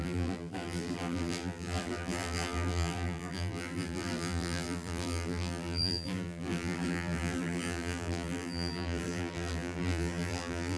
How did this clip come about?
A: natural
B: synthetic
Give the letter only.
B